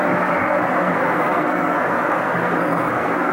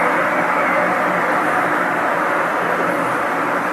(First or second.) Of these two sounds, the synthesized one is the first